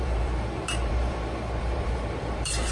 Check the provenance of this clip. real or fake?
fake